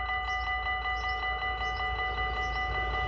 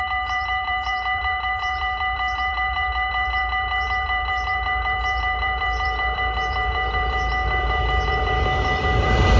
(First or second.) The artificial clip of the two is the second